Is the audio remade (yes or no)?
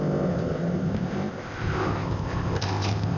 yes